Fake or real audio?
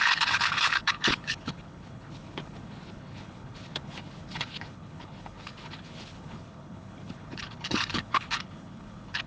fake